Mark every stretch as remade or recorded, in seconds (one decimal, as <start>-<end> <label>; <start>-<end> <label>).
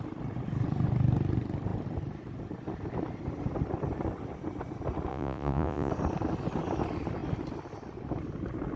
0.0-5.1 recorded; 5.1-5.9 remade; 5.9-8.8 recorded